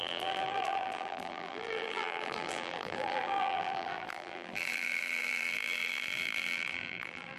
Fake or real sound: fake